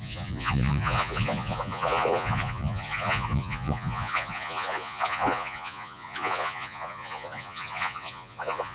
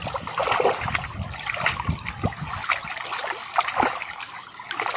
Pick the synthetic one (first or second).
first